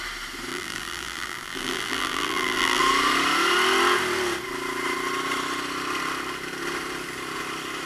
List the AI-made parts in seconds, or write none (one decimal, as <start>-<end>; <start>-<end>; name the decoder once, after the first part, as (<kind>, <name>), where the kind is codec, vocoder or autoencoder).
0.5-2.8 (vocoder, BigVGAN v2)